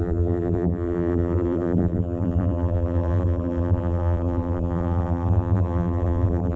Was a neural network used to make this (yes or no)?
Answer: yes